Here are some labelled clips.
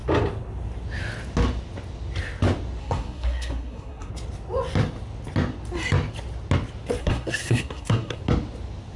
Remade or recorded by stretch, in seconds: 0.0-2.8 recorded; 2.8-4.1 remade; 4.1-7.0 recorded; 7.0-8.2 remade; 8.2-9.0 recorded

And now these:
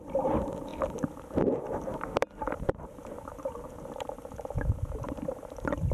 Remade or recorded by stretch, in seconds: 0.0-0.7 remade; 0.7-1.6 recorded; 1.6-5.9 remade

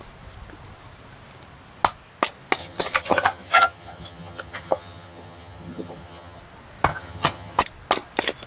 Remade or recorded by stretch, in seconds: 0.0-2.6 recorded; 2.6-6.4 remade; 6.4-6.9 recorded; 6.9-7.6 remade; 7.6-8.5 recorded

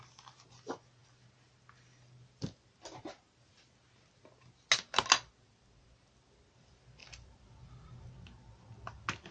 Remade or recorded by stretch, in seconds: 0.0-9.3 recorded

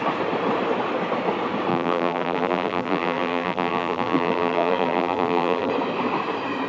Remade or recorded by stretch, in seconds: 0.0-1.7 recorded; 1.7-5.7 remade; 5.7-6.7 recorded

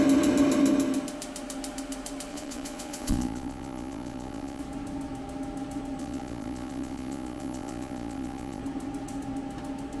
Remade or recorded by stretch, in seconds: 0.0-2.3 recorded; 2.3-4.6 remade; 4.6-6.0 recorded; 6.0-8.6 remade; 8.6-10.0 recorded